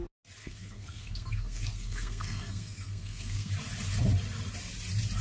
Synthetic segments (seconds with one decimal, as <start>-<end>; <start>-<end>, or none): 0.4-3.5